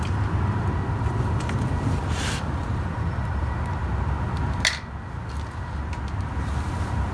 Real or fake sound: real